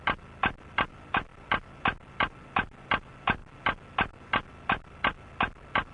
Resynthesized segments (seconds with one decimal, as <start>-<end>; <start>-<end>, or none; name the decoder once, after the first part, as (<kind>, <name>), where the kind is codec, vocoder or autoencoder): none